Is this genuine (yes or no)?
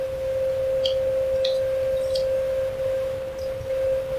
yes